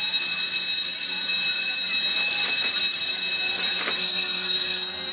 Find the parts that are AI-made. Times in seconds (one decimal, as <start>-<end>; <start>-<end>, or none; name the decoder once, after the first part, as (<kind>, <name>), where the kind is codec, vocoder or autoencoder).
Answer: 4.0-5.1 (codec, SNAC)